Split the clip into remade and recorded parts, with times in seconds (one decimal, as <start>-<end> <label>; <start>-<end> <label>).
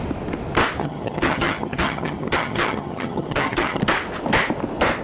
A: 0.0-0.8 recorded; 0.8-3.8 remade; 3.8-5.0 recorded